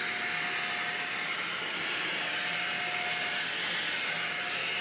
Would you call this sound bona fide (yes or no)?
yes